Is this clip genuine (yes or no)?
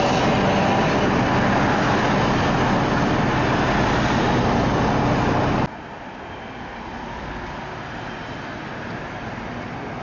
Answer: yes